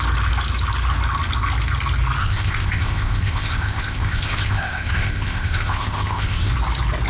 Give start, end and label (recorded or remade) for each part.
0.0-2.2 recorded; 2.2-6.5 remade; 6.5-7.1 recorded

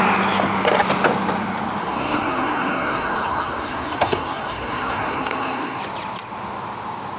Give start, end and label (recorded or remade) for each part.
0.0-1.8 recorded; 1.8-5.8 remade; 5.8-7.2 recorded

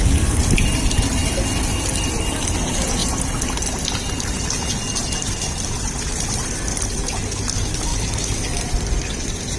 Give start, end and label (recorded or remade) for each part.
0.0-9.6 recorded